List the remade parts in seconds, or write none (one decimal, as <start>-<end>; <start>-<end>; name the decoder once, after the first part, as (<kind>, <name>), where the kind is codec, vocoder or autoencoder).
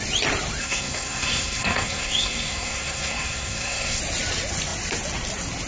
0.6-4.0 (codec, SNAC)